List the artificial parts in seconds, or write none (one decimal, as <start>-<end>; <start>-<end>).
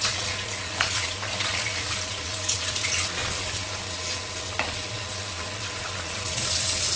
0.0-7.0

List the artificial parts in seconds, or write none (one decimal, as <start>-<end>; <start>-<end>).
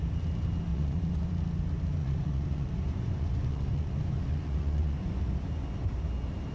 0.7-1.3; 2.0-5.2